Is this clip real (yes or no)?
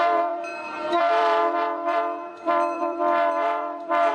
no